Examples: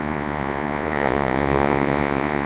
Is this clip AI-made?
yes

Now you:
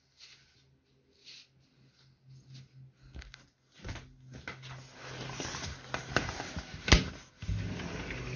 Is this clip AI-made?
no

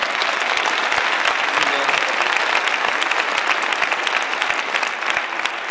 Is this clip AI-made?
no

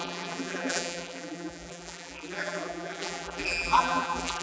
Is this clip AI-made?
yes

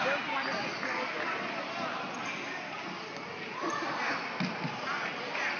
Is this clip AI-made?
no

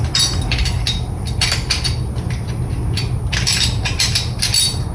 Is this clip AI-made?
no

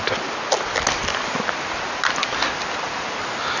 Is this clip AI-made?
no